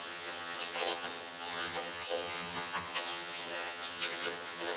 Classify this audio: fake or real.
fake